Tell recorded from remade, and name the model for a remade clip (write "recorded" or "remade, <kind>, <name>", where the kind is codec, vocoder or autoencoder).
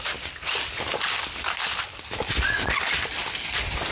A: recorded